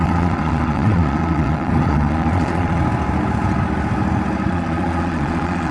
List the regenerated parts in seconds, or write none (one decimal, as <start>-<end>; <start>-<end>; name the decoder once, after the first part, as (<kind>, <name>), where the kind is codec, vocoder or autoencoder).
0.0-2.8 (vocoder, Vocos); 4.5-5.7